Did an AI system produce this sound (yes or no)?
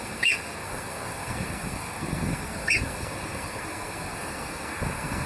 yes